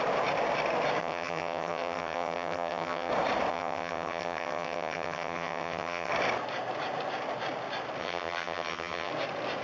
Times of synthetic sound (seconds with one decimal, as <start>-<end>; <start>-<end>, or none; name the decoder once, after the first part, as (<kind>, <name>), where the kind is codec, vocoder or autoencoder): 1.0-3.1 (vocoder, HiFi-GAN); 3.5-6.1; 8.0-9.1